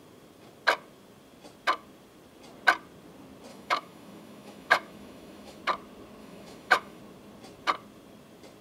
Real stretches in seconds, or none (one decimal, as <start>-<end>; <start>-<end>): 0.0-3.5; 5.6-6.2; 7.0-8.6